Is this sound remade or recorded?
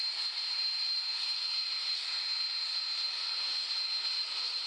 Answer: recorded